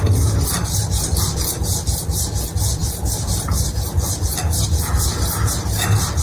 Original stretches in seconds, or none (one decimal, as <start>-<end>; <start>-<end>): 0.0-2.8; 4.1-6.2